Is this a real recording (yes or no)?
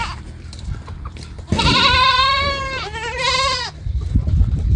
no